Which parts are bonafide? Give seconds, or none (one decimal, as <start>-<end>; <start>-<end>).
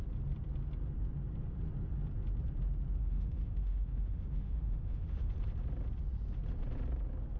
0.0-3.0; 5.3-7.4